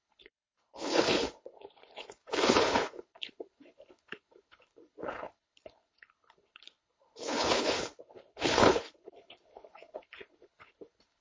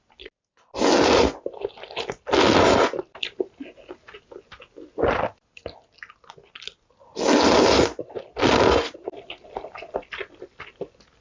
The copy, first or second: first